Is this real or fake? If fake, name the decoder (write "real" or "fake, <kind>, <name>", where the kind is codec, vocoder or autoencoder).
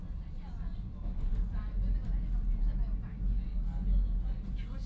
real